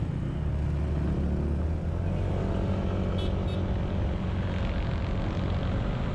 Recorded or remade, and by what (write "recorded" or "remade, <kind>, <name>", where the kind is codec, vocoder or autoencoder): recorded